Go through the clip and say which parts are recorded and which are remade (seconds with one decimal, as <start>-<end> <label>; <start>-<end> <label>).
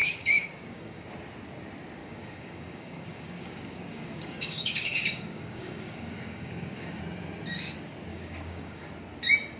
0.0-1.1 remade; 1.1-2.0 recorded; 2.0-7.0 remade; 7.0-8.1 recorded; 8.1-8.9 remade; 8.9-9.6 recorded